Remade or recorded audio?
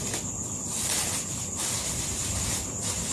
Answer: remade